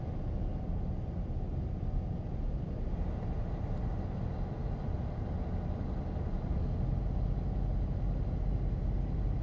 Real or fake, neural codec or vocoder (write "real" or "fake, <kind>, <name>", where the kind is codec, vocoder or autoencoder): real